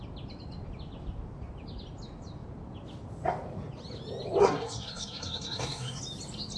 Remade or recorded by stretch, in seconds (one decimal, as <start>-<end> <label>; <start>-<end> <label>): 0.0-4.4 recorded; 4.4-6.0 remade; 6.0-6.6 recorded